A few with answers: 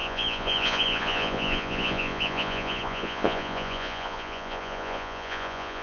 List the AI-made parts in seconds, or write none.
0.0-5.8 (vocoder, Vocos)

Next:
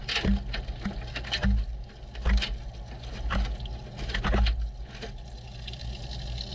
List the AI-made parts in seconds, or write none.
none

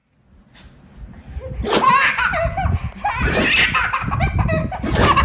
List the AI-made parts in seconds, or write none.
none

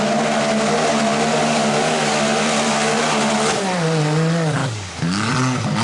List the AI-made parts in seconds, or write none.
1.3-2.2 (codec, DAC); 4.6-5.3

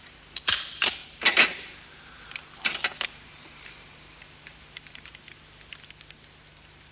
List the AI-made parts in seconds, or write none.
1.0-5.1 (vocoder, BigVGAN v2)

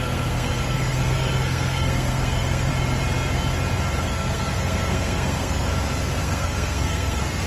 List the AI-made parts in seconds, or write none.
0.0-2.7 (codec, SNAC); 4.0-5.7; 6.2-7.5

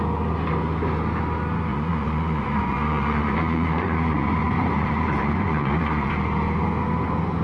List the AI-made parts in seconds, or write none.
1.7-6.1 (vocoder, Vocos)